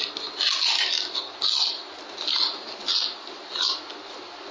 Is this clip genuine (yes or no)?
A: yes